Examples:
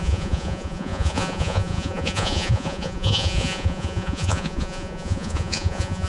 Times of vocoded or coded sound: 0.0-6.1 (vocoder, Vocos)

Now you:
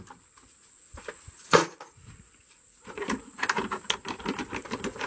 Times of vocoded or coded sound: 1.4-3.3 (vocoder, Vocos)

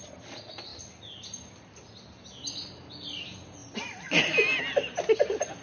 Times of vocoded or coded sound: none